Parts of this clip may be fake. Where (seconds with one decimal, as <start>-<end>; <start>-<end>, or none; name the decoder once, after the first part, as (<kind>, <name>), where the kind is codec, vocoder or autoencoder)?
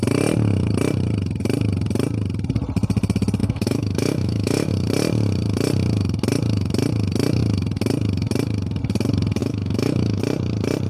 3.4-4.7 (autoencoder, DAC-VAE); 9.4-10.2